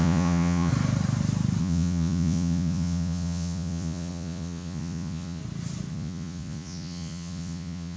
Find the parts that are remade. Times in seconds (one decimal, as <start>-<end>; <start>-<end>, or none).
0.0-0.7; 1.6-5.4; 5.9-8.0